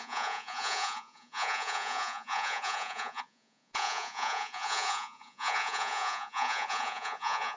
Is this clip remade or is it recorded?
remade